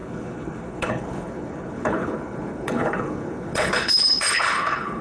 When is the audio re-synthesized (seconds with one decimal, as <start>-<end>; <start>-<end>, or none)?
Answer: 0.0-5.0